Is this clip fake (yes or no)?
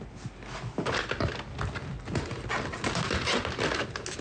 no